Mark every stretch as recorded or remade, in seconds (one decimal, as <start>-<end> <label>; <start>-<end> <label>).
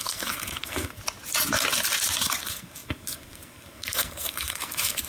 0.0-1.0 remade; 1.0-2.4 recorded; 2.4-5.1 remade